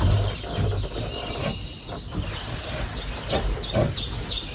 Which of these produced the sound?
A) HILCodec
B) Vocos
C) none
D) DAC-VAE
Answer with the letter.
C